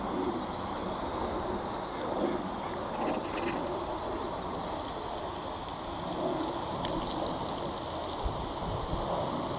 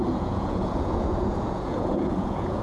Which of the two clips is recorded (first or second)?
first